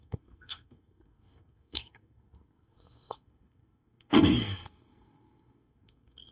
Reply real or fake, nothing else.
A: fake